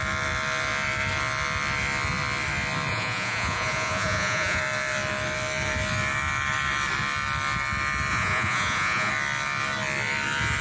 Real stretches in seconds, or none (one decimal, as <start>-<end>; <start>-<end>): 0.0-2.9; 4.6-8.1; 9.1-10.6